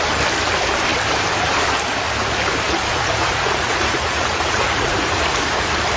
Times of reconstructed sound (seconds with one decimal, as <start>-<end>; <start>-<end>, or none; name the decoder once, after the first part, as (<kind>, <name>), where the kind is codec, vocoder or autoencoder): 2.9-5.2 (vocoder, Vocos)